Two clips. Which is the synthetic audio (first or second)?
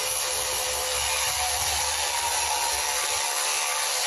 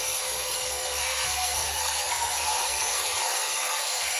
second